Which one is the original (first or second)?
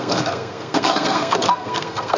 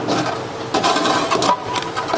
second